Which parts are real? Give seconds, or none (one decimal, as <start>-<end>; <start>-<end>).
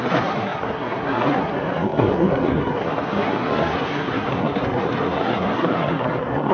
none